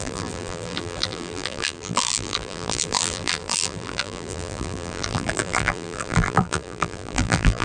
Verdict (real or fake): fake